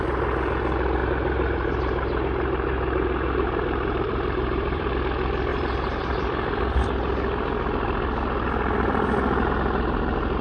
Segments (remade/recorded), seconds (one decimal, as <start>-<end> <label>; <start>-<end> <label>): 0.0-1.0 recorded; 1.0-4.9 remade; 4.9-5.5 recorded; 5.5-6.0 remade; 6.0-10.4 recorded